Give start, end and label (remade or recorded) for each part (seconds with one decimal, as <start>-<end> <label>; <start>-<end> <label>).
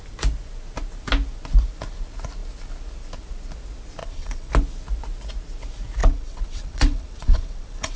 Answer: 0.0-4.0 recorded; 4.0-4.5 remade; 4.5-6.0 recorded; 6.0-8.0 remade